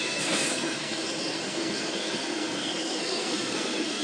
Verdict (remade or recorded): remade